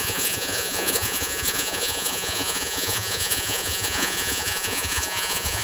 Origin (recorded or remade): remade